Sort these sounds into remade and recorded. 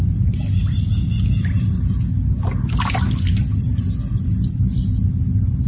recorded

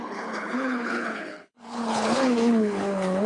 remade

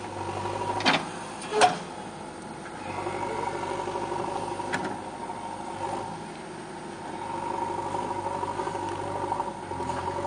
recorded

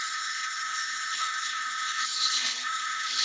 remade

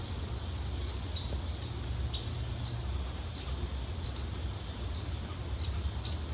recorded